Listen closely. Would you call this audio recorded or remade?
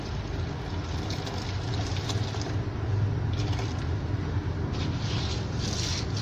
recorded